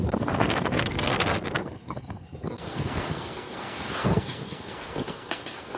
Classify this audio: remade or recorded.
remade